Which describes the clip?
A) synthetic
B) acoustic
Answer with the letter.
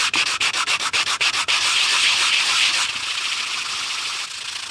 B